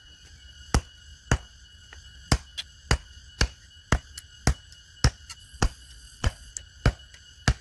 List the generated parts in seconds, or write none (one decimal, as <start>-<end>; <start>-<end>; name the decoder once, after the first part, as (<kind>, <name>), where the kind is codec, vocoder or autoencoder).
5.4-6.5 (vocoder, Vocos)